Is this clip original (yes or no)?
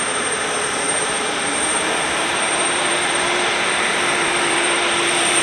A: no